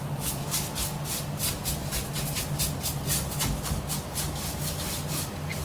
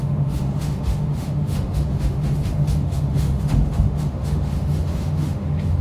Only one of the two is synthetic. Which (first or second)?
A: second